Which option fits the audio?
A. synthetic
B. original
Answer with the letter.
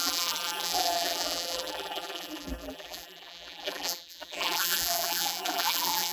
A